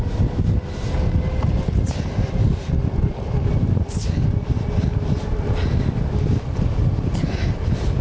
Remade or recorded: recorded